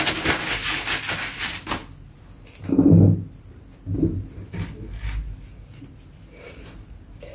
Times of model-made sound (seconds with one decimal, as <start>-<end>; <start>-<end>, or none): none